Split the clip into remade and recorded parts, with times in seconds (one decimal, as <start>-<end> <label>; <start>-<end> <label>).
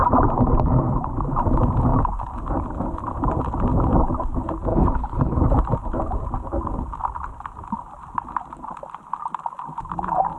0.0-4.7 recorded; 4.7-5.4 remade; 5.4-10.4 recorded